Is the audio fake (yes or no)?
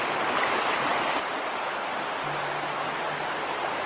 no